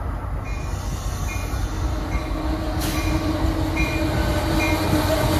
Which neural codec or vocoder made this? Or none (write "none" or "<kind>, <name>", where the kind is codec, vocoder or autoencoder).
none